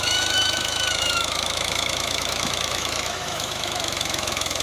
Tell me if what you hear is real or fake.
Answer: fake